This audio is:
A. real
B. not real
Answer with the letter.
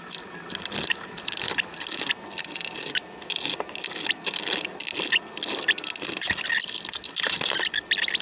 A